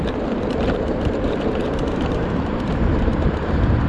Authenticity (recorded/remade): remade